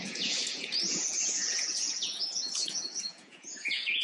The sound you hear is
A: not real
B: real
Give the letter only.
A